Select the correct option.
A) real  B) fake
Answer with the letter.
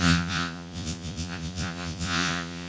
B